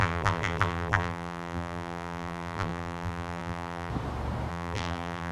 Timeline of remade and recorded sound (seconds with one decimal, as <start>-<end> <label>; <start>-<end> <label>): 0.0-3.9 remade; 3.9-4.5 recorded; 4.5-5.3 remade

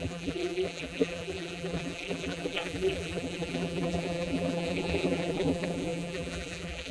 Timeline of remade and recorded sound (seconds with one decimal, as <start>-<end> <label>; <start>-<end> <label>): 0.0-6.9 remade

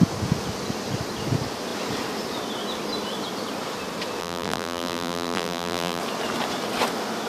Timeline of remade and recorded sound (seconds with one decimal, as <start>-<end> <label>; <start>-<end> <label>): 0.0-4.2 recorded; 4.2-6.0 remade; 6.0-7.3 recorded

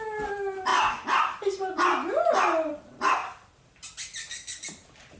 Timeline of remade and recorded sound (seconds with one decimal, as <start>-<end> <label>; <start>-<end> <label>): 0.0-5.2 recorded

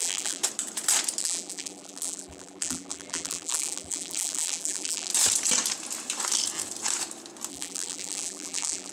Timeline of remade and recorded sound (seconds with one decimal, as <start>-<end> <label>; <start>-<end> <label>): 0.0-0.4 remade; 0.4-1.2 recorded; 1.2-5.1 remade; 5.1-7.5 recorded; 7.5-8.9 remade

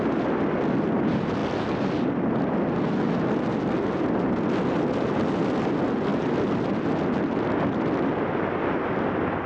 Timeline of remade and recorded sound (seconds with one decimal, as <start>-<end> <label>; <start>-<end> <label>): 0.0-9.5 recorded

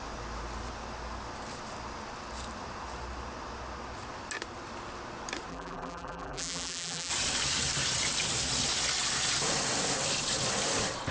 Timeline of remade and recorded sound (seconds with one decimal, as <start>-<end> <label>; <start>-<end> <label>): 0.0-5.5 recorded; 5.5-7.1 remade; 7.1-11.1 recorded